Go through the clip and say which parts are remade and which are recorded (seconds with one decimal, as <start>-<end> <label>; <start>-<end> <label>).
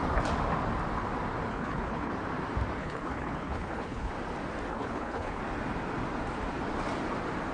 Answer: 0.0-1.5 recorded; 1.5-2.1 remade; 2.1-2.8 recorded; 2.8-4.1 remade; 4.1-4.7 recorded; 4.7-5.4 remade; 5.4-7.5 recorded